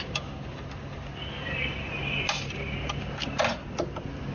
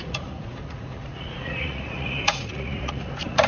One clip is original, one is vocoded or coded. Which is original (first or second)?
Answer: first